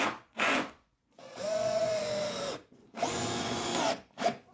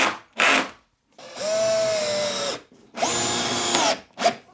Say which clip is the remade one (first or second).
first